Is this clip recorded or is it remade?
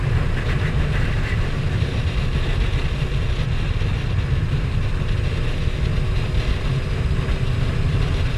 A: recorded